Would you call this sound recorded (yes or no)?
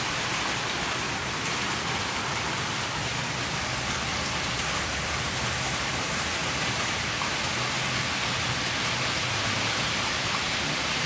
yes